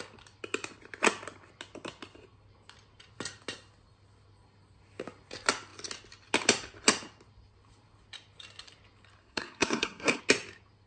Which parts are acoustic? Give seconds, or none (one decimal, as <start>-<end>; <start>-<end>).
0.0-9.2; 10.2-10.9